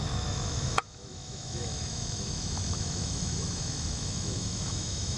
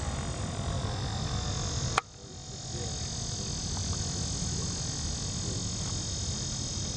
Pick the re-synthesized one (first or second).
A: first